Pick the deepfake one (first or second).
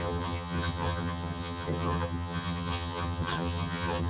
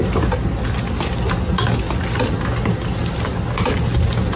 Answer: first